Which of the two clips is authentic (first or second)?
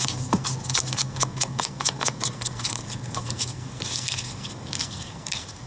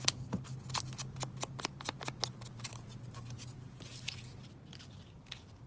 second